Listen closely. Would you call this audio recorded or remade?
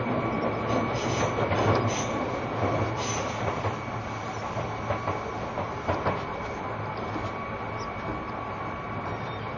recorded